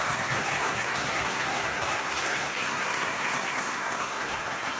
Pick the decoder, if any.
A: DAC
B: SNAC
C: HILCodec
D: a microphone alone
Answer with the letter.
B